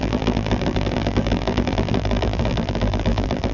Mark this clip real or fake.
fake